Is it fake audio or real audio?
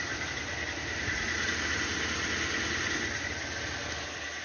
real